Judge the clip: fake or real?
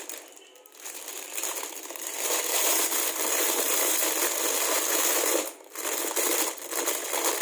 fake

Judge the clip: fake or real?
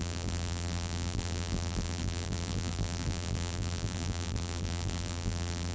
fake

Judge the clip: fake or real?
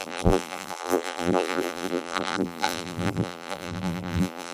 fake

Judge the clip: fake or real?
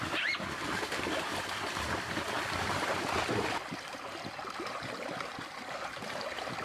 real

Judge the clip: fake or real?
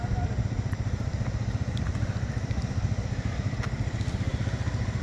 fake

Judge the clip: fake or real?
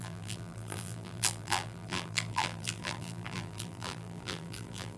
fake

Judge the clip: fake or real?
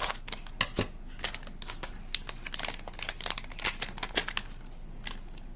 real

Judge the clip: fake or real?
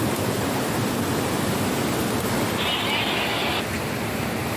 real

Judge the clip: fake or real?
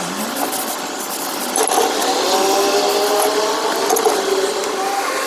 real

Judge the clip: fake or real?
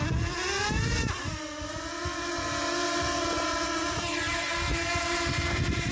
fake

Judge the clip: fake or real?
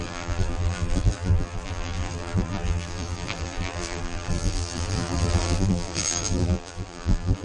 fake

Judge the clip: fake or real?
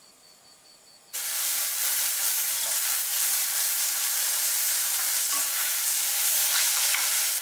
fake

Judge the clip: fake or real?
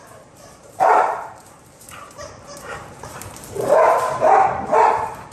fake